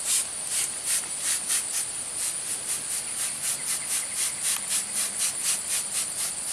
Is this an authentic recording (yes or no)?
yes